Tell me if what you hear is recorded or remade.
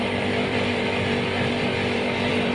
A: remade